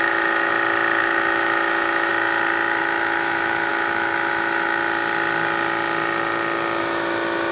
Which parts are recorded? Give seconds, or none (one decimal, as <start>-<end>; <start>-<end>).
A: 0.5-1.0; 2.1-2.8; 4.8-6.8